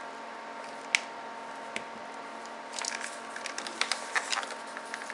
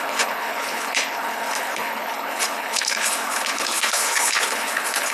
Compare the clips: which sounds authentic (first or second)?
first